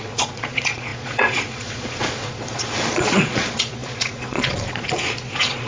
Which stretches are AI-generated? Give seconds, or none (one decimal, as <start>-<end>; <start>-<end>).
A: 0.0-5.7